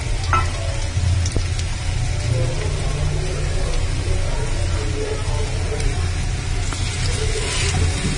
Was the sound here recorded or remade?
recorded